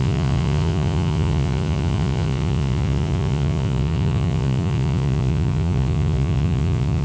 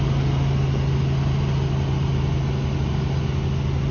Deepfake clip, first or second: first